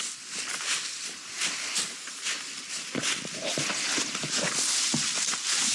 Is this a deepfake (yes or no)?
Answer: no